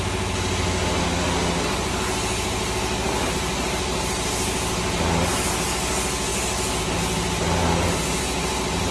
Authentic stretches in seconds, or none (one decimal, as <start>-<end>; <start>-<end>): 0.0-8.9